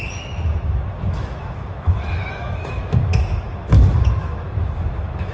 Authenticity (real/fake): fake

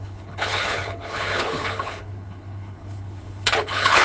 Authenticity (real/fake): fake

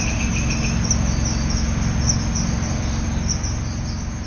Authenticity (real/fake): real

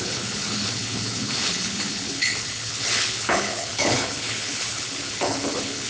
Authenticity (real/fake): fake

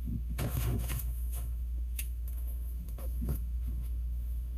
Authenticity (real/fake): fake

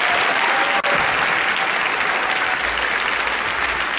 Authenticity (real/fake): real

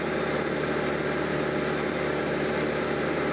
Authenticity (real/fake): real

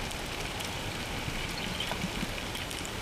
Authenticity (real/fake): fake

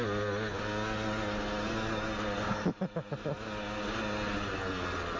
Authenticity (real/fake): real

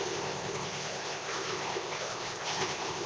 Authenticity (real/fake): fake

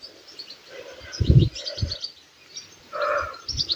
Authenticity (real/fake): real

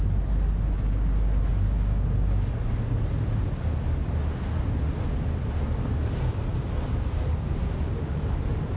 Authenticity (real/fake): real